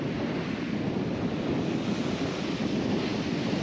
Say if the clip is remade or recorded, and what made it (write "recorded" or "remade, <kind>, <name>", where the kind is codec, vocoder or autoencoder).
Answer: recorded